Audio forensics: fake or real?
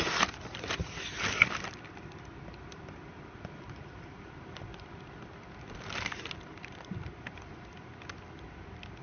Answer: fake